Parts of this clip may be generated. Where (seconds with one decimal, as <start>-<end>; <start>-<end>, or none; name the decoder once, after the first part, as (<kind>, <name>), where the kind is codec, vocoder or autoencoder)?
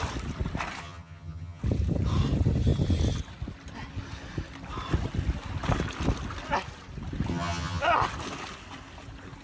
0.8-1.6 (vocoder, HiFi-GAN); 7.3-7.8